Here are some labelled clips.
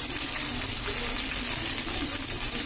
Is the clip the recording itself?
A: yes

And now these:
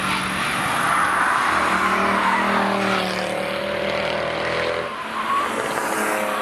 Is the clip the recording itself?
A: yes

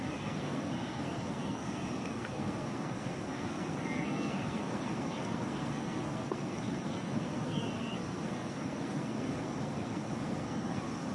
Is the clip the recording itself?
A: no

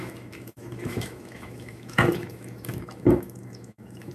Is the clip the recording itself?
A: no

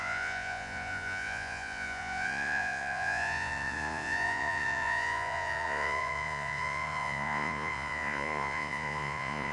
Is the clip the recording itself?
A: no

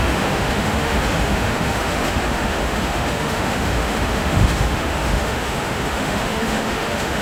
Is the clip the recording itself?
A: no